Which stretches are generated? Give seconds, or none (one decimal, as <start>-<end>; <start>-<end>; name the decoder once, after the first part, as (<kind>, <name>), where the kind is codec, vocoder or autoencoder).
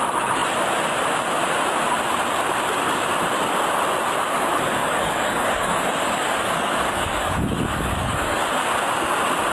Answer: 4.8-8.5 (codec, DAC)